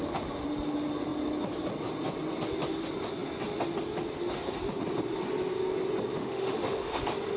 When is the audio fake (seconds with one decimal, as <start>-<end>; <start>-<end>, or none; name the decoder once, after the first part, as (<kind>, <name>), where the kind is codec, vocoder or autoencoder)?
6.2-7.0 (autoencoder, DAC-VAE)